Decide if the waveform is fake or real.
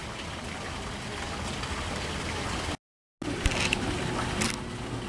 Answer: real